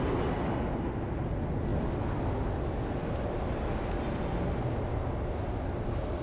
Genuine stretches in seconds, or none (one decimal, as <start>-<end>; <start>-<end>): 0.0-6.2